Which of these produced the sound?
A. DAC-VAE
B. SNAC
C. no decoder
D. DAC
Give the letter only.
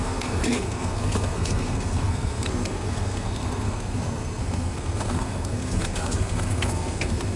B